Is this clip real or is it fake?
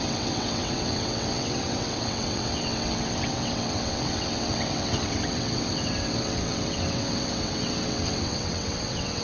fake